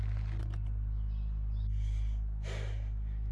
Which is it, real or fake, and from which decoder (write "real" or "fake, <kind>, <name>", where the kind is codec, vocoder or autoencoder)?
real